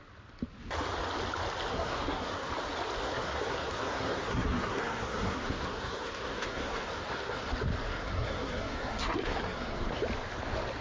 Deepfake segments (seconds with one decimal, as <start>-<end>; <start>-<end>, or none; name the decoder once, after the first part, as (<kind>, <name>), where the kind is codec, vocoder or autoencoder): 1.7-2.5 (codec, SNAC); 3.0-7.5; 7.9-9.9